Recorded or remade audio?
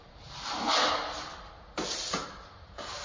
recorded